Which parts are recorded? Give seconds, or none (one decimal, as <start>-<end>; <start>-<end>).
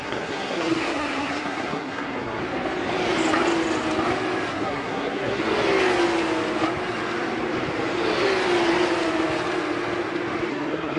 2.4-4.5; 5.4-10.5